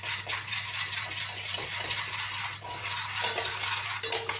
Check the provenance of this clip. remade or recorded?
recorded